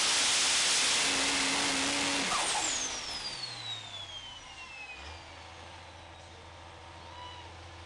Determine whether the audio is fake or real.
real